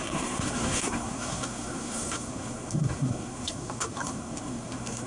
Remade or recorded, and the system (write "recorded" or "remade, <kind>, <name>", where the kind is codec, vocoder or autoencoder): remade, codec, SNAC